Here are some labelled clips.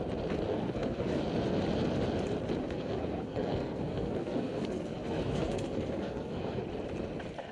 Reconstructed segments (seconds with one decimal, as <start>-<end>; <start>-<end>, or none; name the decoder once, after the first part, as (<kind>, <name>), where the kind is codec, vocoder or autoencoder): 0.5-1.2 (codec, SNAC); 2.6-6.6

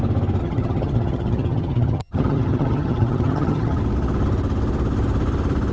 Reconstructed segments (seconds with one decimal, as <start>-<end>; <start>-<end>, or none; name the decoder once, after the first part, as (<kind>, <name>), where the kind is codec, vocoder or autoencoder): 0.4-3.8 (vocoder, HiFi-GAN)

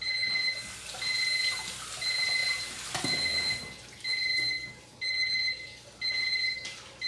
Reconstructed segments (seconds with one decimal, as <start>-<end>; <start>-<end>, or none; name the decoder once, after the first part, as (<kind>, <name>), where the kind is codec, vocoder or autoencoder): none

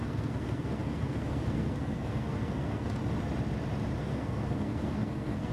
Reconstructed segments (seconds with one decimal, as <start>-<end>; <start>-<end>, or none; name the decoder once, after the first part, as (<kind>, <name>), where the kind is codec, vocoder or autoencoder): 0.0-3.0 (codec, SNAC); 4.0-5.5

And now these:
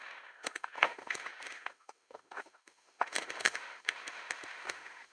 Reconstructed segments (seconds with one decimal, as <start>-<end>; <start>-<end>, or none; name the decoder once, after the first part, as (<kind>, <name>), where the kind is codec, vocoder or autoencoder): 0.0-5.1 (autoencoder, DAC-VAE)

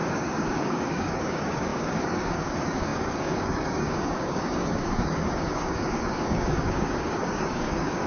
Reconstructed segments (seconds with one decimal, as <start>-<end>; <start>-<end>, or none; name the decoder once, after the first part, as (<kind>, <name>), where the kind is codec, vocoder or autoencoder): 0.0-8.1 (codec, DAC)

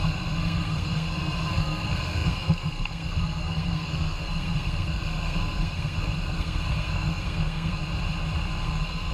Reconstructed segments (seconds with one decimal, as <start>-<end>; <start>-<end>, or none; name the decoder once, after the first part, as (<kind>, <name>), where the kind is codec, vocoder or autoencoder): 0.0-7.8 (codec, SNAC); 8.5-9.1

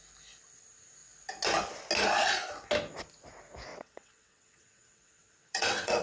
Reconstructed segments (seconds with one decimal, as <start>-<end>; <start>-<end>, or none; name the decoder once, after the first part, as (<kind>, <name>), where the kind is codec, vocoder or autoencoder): 3.7-6.0 (vocoder, WaveNeXt)